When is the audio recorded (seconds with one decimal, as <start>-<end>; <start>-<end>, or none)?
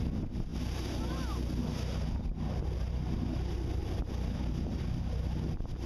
0.0-5.9